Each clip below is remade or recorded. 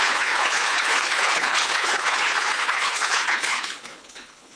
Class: remade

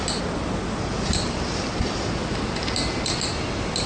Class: recorded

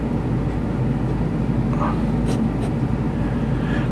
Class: recorded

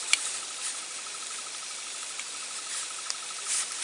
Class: recorded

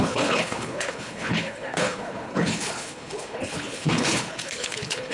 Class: remade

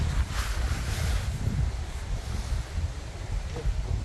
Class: recorded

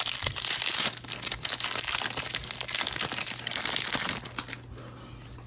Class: recorded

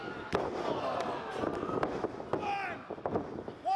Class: recorded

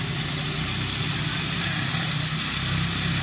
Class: recorded